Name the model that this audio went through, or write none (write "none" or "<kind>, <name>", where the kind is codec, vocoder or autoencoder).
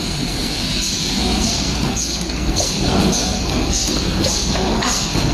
codec, SNAC